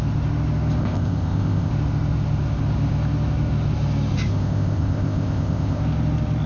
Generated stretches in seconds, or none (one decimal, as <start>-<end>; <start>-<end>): 0.8-1.7; 4.3-5.8